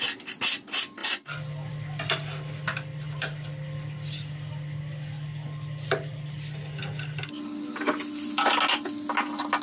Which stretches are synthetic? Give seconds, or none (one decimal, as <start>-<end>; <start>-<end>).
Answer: none